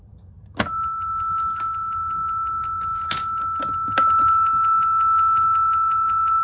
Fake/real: real